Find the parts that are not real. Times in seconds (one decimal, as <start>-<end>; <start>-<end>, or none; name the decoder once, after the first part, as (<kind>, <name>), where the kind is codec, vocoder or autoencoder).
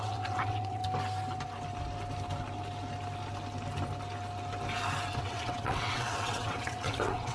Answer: 0.0-0.8 (vocoder, WaveNeXt); 5.2-7.3